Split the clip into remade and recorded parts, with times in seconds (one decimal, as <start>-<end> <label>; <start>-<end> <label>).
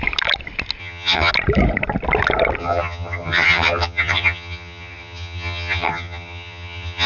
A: 0.0-0.8 recorded; 0.8-1.3 remade; 1.3-2.6 recorded; 2.6-7.1 remade